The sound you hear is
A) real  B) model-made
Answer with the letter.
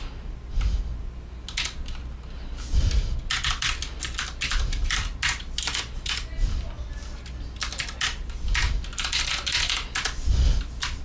A